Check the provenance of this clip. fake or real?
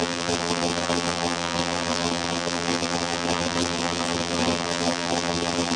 fake